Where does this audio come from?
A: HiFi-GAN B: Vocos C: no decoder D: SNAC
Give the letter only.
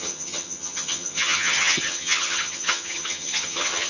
A